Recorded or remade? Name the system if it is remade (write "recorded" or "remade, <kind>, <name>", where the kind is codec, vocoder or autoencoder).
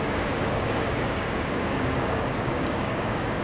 remade, codec, DAC